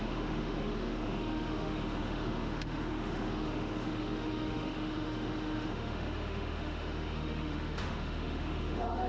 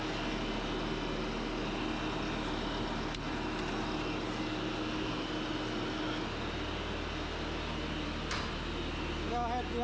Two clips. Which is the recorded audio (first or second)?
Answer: second